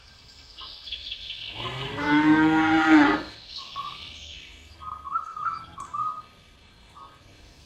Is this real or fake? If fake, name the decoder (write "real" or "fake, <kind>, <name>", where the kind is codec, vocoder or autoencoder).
fake, codec, SNAC